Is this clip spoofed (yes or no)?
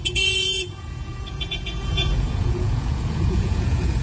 yes